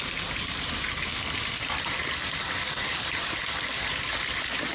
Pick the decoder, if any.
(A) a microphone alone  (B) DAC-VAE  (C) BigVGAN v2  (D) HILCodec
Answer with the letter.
A